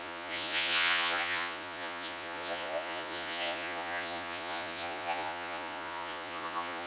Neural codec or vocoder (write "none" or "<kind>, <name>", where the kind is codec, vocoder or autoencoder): vocoder, Vocos